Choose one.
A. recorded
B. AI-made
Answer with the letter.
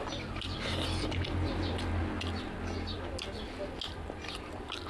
A